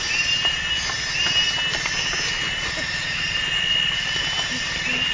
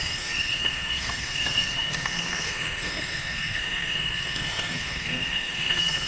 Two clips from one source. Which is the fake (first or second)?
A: second